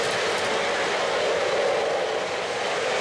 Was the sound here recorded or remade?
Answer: recorded